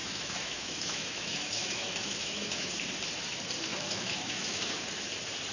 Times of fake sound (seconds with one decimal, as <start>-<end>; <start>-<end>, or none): 0.0-2.7; 3.7-4.7